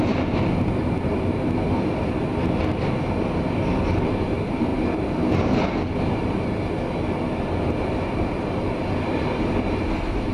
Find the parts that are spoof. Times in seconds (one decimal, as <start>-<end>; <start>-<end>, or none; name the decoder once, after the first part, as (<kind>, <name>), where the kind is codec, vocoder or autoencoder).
none